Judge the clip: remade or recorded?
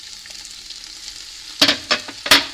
recorded